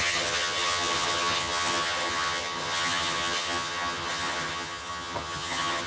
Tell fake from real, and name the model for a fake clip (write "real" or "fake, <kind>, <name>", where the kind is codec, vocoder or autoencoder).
fake, vocoder, HiFi-GAN